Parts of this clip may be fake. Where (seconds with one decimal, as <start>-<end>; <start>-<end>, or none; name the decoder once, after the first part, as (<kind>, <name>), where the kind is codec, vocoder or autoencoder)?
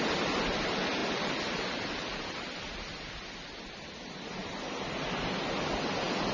none